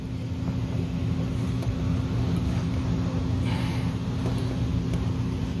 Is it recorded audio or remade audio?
recorded